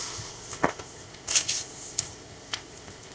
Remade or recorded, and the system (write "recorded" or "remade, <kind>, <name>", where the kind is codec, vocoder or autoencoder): remade, codec, ZipCodec